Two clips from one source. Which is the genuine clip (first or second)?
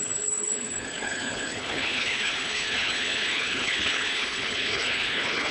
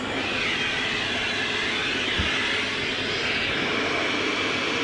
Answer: second